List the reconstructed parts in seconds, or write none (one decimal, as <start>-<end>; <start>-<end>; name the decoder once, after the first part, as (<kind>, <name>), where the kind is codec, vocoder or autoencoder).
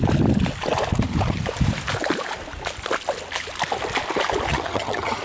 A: 4.5-5.2 (vocoder, HiFi-GAN)